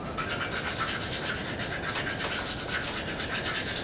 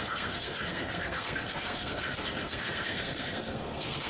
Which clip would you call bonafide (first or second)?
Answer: first